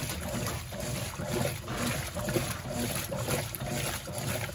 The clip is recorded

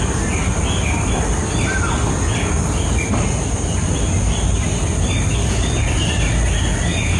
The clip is recorded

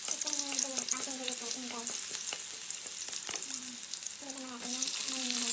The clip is recorded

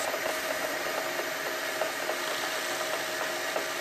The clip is recorded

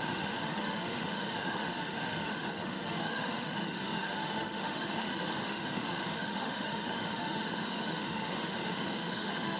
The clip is remade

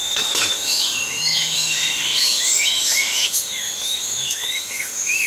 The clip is remade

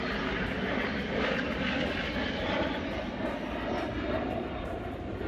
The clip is recorded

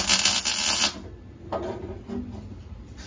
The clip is recorded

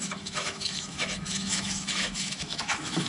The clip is remade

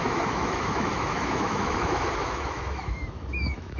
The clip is remade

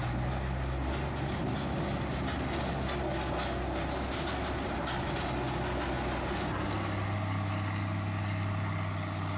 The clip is recorded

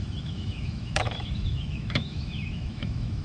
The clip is remade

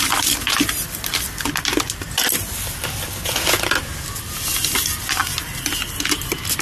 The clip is recorded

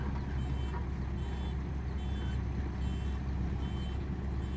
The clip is recorded